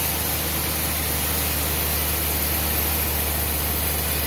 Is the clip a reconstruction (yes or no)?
no